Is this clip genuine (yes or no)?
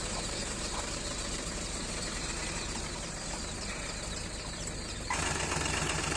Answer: no